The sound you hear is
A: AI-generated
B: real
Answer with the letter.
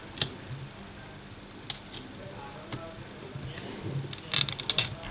B